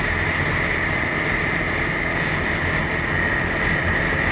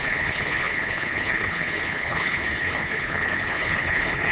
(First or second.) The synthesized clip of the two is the second